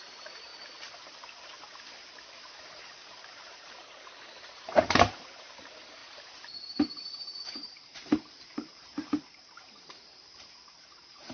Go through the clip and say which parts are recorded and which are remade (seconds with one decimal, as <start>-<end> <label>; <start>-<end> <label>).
0.0-0.5 remade; 0.5-2.3 recorded; 2.3-11.3 remade